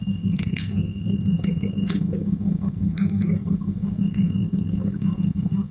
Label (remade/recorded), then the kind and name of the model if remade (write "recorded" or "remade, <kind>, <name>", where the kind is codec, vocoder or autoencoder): remade, codec, SNAC